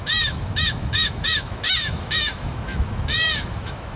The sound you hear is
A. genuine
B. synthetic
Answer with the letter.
B